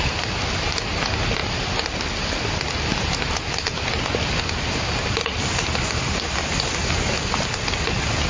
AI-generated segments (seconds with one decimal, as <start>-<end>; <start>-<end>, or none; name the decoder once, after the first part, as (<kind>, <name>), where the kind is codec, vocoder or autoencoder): none